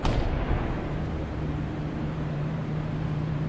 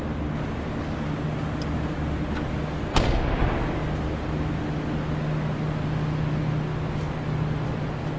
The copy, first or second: first